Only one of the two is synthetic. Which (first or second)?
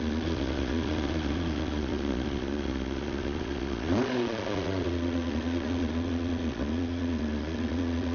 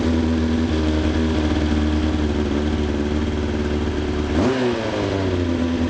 first